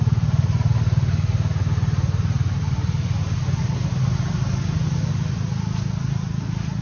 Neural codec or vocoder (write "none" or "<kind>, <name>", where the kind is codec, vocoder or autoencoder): none